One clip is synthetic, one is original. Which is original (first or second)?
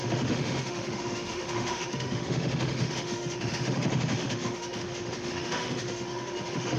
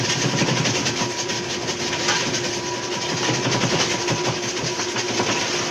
second